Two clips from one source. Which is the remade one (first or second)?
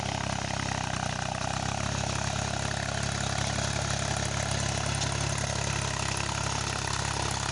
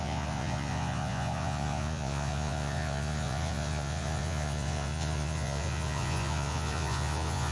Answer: second